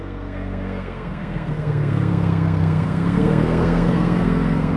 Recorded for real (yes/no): no